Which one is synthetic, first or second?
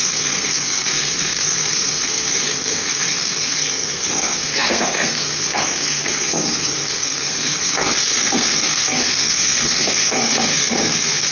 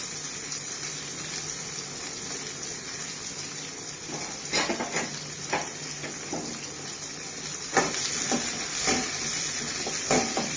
first